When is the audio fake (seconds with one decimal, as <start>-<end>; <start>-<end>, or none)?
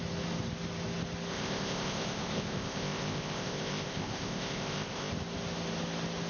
1.3-5.1